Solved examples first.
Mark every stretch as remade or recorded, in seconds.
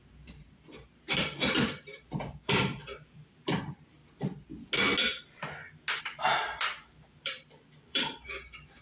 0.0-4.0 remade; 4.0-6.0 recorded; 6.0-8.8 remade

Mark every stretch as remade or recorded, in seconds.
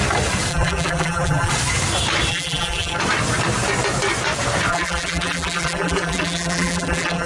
0.0-0.5 recorded; 0.5-1.5 remade; 1.5-2.3 recorded; 2.3-3.0 remade; 3.0-4.7 recorded; 4.7-7.3 remade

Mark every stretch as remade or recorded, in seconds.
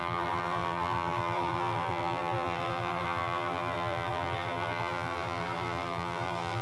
0.0-6.6 remade